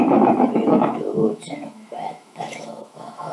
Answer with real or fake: fake